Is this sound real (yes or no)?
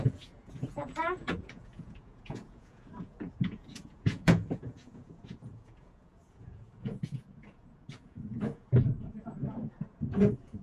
no